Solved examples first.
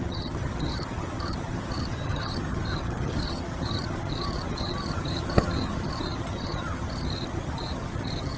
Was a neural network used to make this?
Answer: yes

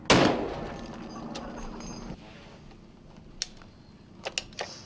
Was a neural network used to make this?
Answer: no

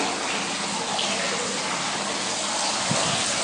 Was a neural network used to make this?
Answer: no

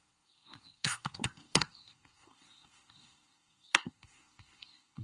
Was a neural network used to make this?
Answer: yes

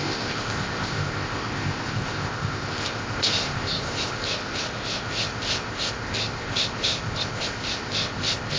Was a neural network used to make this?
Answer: yes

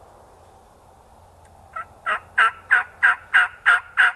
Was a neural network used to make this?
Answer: no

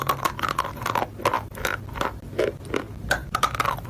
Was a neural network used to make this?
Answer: no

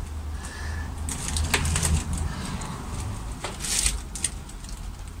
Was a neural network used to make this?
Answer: no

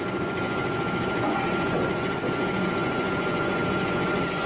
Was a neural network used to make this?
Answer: yes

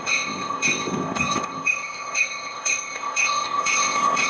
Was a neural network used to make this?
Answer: yes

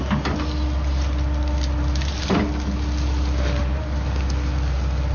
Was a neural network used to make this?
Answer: no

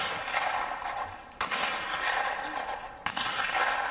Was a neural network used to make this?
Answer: no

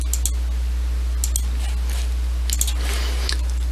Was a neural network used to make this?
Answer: no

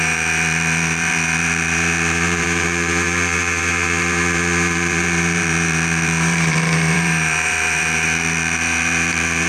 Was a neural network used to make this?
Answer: yes